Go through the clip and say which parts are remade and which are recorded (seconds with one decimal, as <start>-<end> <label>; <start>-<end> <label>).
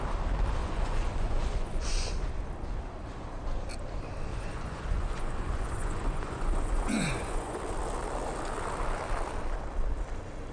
0.0-0.6 recorded; 0.6-2.1 remade; 2.1-4.3 recorded; 4.3-7.6 remade; 7.6-10.5 recorded